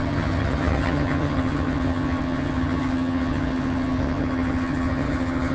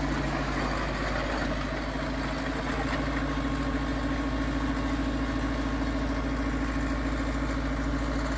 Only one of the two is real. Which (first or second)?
second